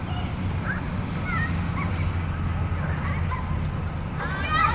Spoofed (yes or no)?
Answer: no